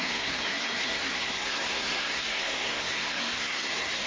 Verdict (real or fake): fake